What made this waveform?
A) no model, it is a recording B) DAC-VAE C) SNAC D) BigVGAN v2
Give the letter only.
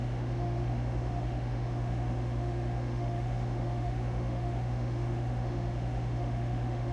B